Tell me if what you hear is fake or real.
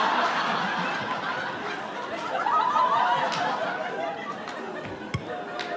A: real